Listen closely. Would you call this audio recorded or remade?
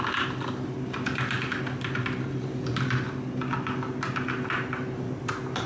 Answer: recorded